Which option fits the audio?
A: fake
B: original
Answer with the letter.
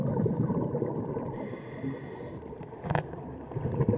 B